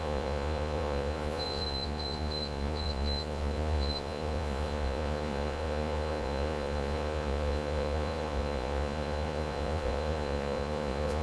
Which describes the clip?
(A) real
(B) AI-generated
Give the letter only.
B